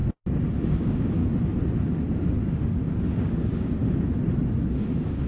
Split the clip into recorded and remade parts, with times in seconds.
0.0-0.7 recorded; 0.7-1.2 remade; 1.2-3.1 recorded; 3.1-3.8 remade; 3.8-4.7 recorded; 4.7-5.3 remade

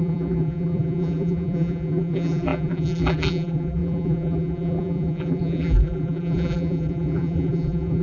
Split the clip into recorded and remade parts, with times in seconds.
0.0-8.0 remade

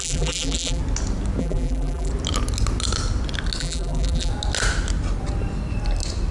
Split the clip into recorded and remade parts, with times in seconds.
0.0-0.8 remade; 0.8-1.4 recorded; 1.4-2.1 remade; 2.1-3.6 recorded; 3.6-4.3 remade; 4.3-6.3 recorded

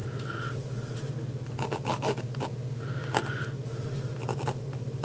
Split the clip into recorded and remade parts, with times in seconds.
0.0-5.0 recorded

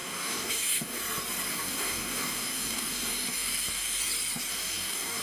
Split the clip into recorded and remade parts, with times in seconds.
0.0-1.0 remade; 1.0-1.5 recorded; 1.5-4.0 remade; 4.0-4.5 recorded; 4.5-5.2 remade

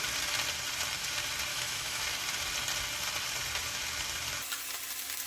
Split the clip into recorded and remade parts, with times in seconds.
0.0-1.5 recorded; 1.5-2.0 remade; 2.0-5.3 recorded

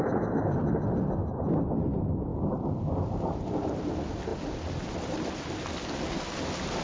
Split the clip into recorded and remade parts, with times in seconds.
0.0-2.3 recorded; 2.3-3.9 remade; 3.9-6.8 recorded

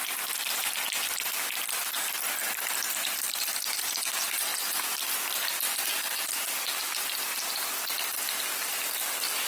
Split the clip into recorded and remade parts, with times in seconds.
0.0-4.5 recorded; 4.5-6.6 remade; 6.6-9.5 recorded